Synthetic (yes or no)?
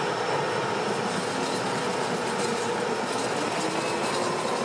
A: no